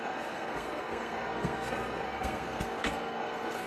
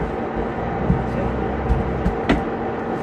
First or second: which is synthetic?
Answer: first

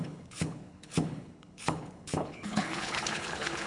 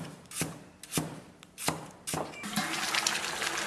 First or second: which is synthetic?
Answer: first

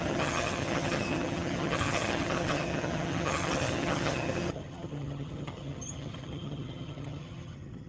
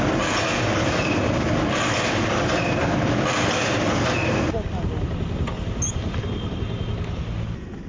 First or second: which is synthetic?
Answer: first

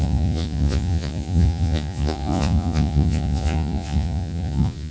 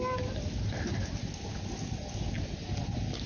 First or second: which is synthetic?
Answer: first